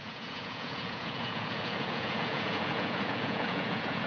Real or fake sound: fake